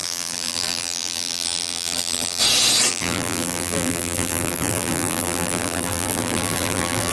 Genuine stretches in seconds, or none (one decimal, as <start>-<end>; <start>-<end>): 2.4-2.9